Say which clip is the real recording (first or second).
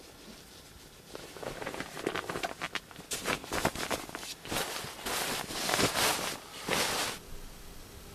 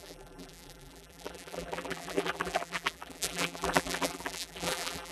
first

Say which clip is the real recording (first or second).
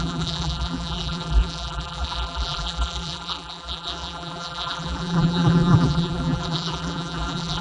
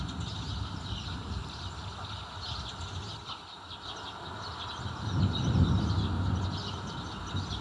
second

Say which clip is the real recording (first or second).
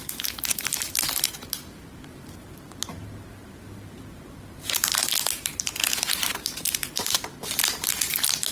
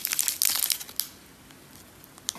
second